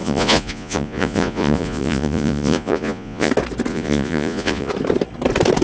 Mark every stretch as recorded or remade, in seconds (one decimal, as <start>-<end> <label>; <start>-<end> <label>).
0.0-3.3 remade; 3.3-3.7 recorded; 3.7-4.7 remade; 4.7-5.6 recorded